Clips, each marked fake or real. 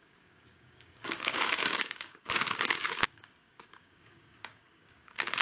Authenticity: fake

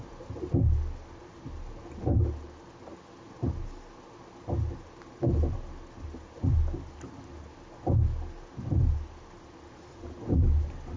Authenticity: real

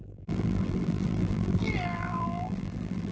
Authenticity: fake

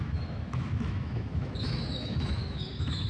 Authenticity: fake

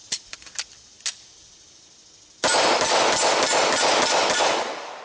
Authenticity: real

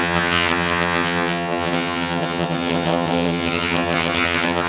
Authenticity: fake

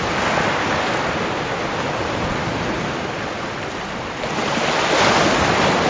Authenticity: real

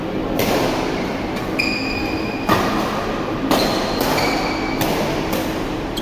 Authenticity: real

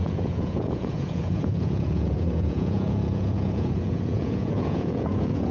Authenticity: fake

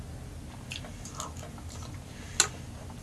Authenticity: real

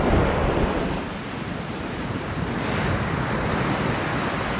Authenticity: fake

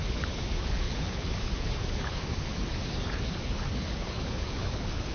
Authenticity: fake